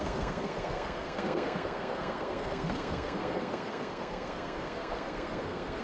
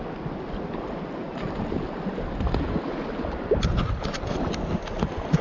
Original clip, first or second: second